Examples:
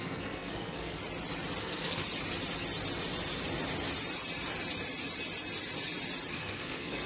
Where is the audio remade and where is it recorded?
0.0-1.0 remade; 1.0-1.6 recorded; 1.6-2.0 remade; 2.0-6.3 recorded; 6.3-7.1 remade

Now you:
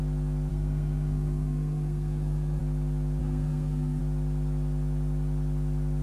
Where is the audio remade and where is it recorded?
0.0-0.5 recorded; 0.5-2.6 remade; 2.6-3.2 recorded; 3.2-4.0 remade; 4.0-6.0 recorded

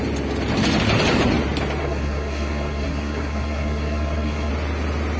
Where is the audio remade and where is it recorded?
0.0-1.8 recorded; 1.8-4.5 remade; 4.5-5.2 recorded

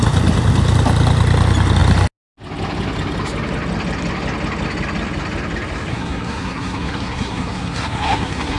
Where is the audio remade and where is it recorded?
0.0-5.9 recorded; 5.9-8.6 remade

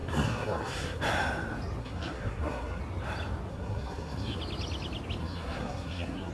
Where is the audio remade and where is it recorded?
0.0-1.0 remade; 1.0-1.8 recorded; 1.8-2.8 remade; 2.8-3.5 recorded; 3.5-4.4 remade; 4.4-5.2 recorded; 5.2-6.3 remade

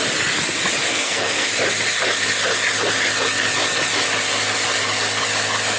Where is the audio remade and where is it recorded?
0.0-0.9 recorded; 0.9-1.5 remade; 1.5-5.8 recorded